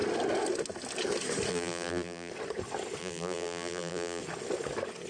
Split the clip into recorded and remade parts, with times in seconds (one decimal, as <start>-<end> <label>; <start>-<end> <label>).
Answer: 0.0-1.5 recorded; 1.5-2.3 remade; 2.3-3.0 recorded; 3.0-4.2 remade; 4.2-5.1 recorded